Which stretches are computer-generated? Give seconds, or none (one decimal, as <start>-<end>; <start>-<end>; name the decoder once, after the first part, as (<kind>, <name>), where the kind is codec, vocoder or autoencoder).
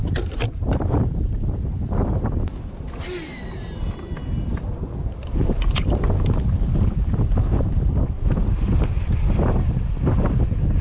0.0-4.5 (vocoder, BigVGAN v2); 5.2-7.8